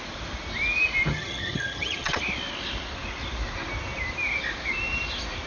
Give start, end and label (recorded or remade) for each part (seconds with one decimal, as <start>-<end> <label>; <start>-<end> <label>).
0.0-1.1 recorded; 1.1-2.2 remade; 2.2-5.5 recorded

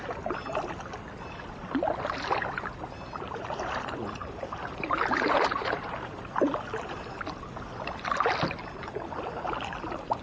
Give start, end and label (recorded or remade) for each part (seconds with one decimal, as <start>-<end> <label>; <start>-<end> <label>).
0.0-4.2 recorded; 4.2-6.2 remade; 6.2-10.2 recorded

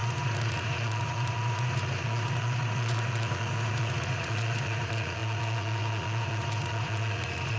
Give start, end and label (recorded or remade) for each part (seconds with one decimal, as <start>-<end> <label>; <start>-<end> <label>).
0.0-7.6 remade

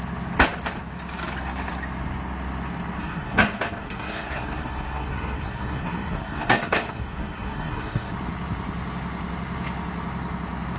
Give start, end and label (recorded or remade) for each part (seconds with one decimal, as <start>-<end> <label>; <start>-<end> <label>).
0.0-3.0 recorded; 3.0-8.1 remade; 8.1-10.8 recorded

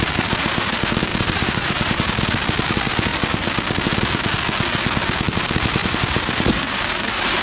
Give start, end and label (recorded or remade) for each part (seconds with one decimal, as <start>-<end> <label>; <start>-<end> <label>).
0.0-1.1 recorded; 1.1-2.2 remade; 2.2-5.8 recorded; 5.8-7.4 remade

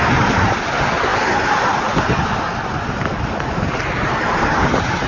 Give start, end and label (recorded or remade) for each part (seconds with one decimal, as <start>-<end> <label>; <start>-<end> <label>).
0.0-1.1 remade; 1.1-3.5 recorded; 3.5-5.1 remade

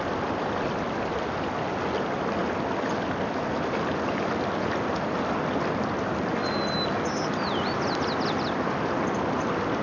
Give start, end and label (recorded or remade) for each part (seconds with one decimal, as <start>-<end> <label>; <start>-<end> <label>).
0.0-9.8 recorded